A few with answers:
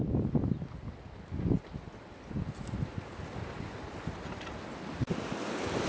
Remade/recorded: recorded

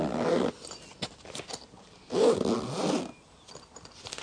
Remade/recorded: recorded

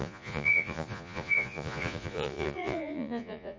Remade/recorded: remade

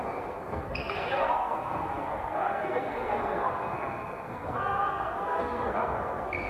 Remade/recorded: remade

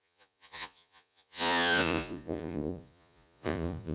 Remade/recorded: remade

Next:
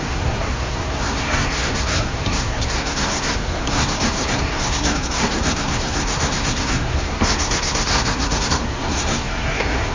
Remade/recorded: remade